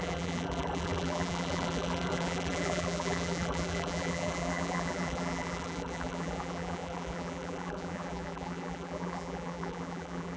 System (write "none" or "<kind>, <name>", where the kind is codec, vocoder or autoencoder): vocoder, BigVGAN v2